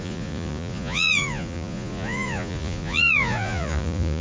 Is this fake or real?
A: fake